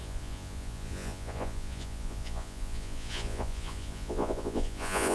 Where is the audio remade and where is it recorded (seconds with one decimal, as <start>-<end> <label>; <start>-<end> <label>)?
0.0-5.1 remade